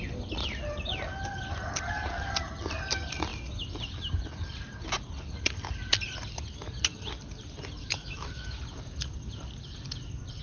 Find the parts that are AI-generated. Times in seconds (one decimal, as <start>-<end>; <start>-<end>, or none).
7.8-8.6